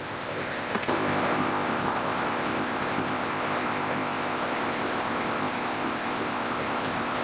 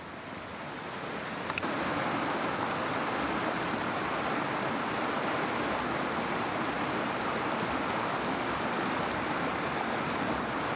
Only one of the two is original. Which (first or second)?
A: second